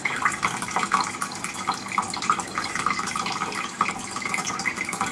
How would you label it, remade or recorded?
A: remade